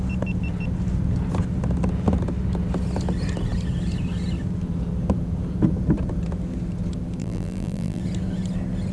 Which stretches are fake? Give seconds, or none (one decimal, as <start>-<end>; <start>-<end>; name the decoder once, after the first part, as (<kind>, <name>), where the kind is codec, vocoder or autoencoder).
7.2-8.0 (vocoder, BigVGAN v2)